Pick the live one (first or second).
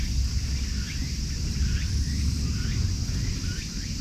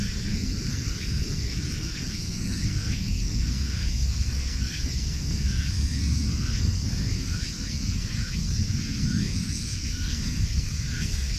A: first